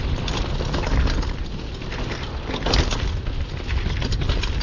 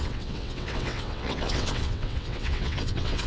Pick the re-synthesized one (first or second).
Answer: second